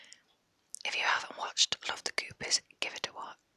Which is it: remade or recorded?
recorded